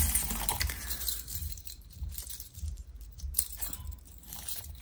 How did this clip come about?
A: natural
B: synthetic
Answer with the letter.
B